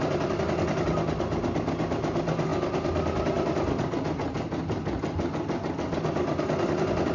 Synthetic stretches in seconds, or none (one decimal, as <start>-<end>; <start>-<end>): none